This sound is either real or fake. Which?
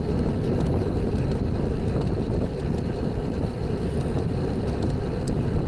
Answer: real